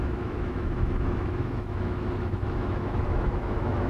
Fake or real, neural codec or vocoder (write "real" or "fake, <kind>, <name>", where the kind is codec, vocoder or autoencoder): fake, autoencoder, DAC-VAE